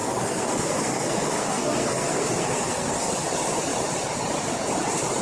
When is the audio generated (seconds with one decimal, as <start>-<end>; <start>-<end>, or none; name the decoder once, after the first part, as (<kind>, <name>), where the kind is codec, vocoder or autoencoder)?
0.0-3.1 (codec, SNAC)